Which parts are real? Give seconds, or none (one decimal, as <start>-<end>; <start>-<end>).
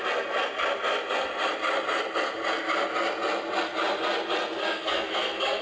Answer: 0.0-4.6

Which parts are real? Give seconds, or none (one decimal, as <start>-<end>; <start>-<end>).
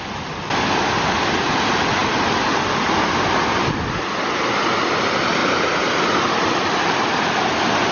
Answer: 0.0-7.9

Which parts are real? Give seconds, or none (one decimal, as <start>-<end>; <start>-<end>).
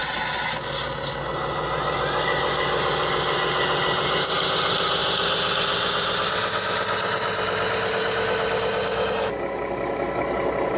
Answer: 0.0-10.8